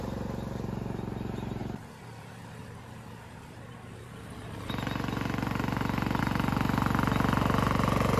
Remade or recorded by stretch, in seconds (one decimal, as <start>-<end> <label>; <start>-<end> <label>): 0.0-8.2 recorded